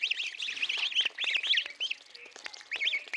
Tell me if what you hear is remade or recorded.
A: recorded